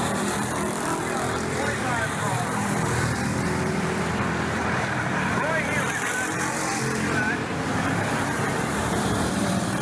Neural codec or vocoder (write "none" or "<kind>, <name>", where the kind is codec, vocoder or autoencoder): vocoder, BigVGAN v2